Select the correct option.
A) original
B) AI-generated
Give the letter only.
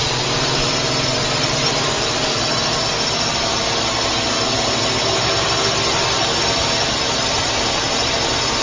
A